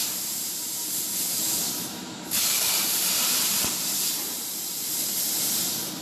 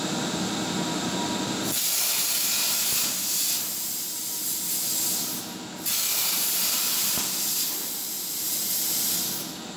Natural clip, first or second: second